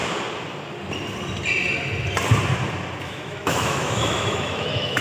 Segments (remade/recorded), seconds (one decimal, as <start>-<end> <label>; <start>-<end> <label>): 0.0-3.0 recorded; 3.0-5.0 remade